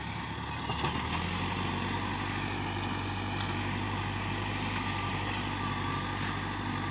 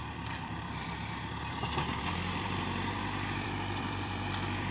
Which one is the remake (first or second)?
second